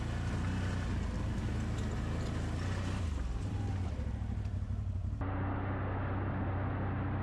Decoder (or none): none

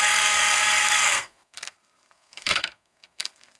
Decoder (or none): codec, SNAC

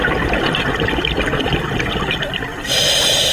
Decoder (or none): none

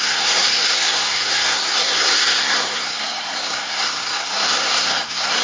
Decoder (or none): codec, SNAC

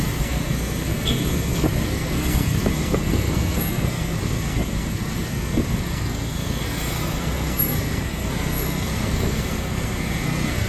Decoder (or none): codec, SNAC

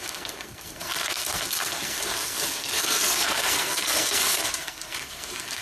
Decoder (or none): codec, SNAC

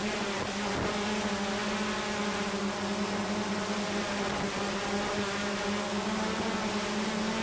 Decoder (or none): none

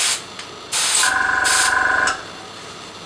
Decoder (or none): none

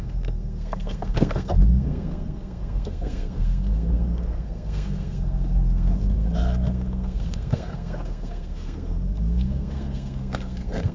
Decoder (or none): codec, SNAC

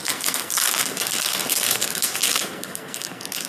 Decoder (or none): codec, SNAC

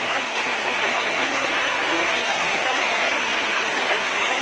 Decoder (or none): codec, SNAC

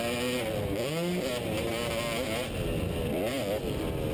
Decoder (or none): none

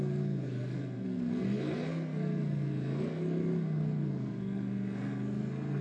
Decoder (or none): codec, SNAC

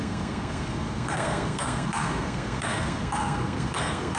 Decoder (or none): codec, SNAC